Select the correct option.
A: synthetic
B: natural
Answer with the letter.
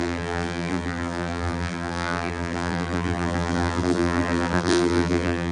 A